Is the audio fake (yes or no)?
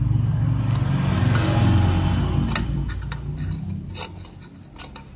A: no